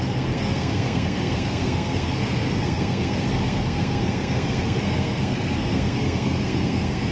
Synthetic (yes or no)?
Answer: yes